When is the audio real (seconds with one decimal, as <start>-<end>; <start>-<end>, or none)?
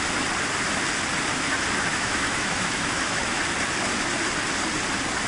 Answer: 0.0-1.9; 3.4-5.3